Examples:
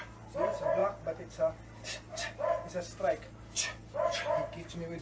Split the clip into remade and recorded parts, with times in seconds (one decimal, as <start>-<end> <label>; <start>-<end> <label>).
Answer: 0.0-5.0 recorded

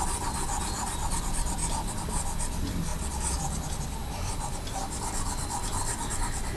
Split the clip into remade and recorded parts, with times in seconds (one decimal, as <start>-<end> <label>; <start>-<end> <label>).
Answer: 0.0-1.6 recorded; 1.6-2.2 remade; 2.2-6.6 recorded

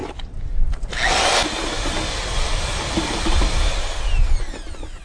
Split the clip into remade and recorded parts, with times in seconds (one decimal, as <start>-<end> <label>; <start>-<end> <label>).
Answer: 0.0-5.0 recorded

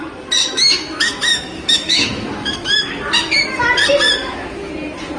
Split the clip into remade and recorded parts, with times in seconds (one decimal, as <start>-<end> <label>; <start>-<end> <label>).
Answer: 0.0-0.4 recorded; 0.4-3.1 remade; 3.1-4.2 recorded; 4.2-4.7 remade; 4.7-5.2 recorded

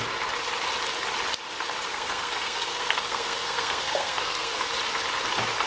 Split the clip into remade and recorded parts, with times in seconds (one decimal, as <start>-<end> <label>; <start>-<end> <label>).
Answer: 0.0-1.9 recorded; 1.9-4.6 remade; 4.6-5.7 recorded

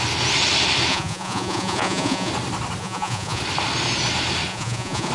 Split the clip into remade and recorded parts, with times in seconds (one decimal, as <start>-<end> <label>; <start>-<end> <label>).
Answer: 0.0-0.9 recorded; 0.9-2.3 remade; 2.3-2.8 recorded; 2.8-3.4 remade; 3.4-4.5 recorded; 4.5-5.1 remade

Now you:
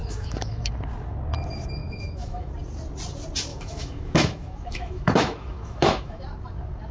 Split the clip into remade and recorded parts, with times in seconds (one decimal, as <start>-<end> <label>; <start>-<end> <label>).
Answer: 0.0-0.7 remade; 0.7-1.8 recorded; 1.8-2.5 remade; 2.5-3.5 recorded; 3.5-6.2 remade; 6.2-6.9 recorded

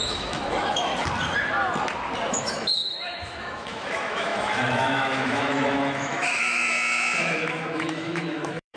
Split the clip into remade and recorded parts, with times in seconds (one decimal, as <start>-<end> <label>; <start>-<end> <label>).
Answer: 0.0-0.9 remade; 0.9-2.3 recorded; 2.3-8.8 remade